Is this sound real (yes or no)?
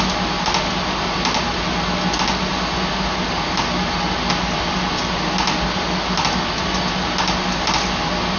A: yes